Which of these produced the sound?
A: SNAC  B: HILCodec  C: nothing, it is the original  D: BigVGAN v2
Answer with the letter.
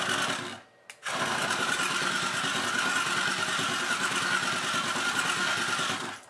C